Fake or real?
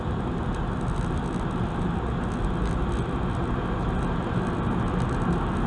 real